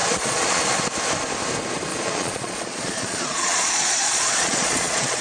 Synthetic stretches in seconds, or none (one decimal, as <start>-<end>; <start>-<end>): 0.0-0.6; 1.9-5.2